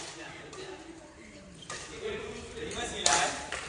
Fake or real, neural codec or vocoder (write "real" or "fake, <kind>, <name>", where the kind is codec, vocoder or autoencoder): fake, vocoder, BigVGAN v2